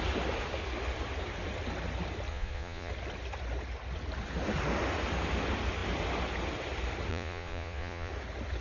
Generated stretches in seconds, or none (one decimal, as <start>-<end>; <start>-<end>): 2.3-2.9; 7.1-8.1